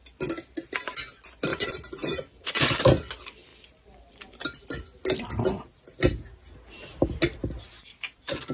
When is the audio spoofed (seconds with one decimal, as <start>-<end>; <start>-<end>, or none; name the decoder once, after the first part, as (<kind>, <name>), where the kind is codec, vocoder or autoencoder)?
1.5-2.8 (vocoder, BigVGAN v2)